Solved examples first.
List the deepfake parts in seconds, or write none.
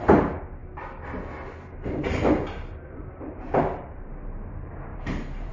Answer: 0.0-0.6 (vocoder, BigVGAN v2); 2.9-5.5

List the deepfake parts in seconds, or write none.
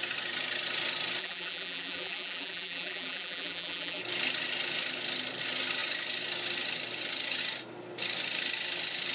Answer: 1.2-4.0 (vocoder, BigVGAN v2)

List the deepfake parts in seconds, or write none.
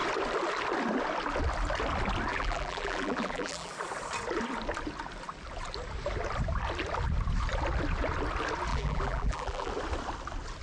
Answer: 2.3-3.7 (vocoder, BigVGAN v2); 8.7-9.7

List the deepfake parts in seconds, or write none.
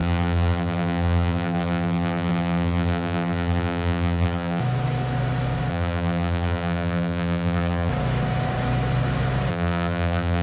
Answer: 0.0-4.6 (vocoder, BigVGAN v2); 5.7-7.9; 9.5-10.4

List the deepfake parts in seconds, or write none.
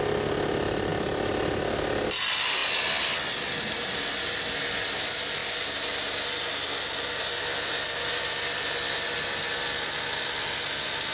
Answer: none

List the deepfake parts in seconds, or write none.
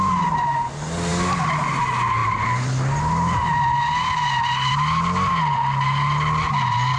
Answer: none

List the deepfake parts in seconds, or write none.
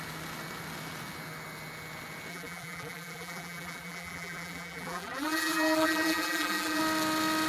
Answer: 2.3-6.8 (vocoder, BigVGAN v2)